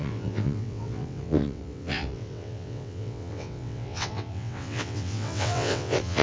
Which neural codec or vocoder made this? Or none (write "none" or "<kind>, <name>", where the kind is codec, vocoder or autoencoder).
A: vocoder, WaveNeXt